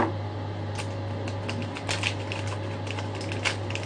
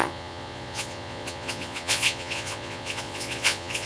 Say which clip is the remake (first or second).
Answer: second